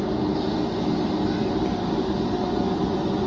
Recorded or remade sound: recorded